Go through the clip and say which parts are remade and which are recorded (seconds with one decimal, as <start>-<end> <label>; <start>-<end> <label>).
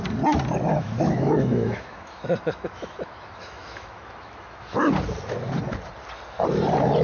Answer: 0.0-0.7 recorded; 0.7-4.9 remade; 4.9-7.0 recorded